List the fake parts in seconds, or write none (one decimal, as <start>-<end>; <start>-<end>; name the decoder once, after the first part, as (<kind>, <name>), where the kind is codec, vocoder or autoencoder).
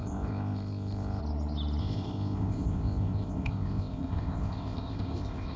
0.0-1.2 (codec, ZipCodec); 1.8-5.6